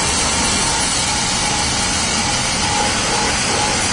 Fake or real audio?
real